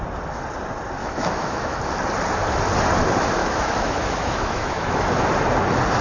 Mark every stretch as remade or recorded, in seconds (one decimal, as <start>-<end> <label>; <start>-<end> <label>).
0.0-1.0 recorded; 1.0-1.8 remade; 1.8-3.4 recorded; 3.4-5.1 remade; 5.1-6.0 recorded